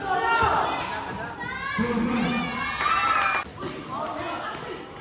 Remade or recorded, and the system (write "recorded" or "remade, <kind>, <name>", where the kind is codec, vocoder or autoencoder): recorded